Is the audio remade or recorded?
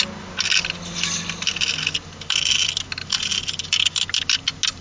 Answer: recorded